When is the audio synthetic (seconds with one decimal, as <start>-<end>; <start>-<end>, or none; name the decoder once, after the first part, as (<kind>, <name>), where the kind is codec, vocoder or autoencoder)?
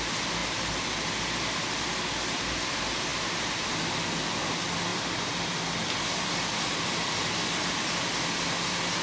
none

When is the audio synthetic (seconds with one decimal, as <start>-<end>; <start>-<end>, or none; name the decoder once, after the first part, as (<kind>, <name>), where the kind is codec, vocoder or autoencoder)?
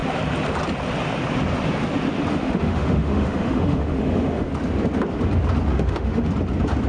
2.3-4.5 (autoencoder, DAC-VAE); 5.7-6.3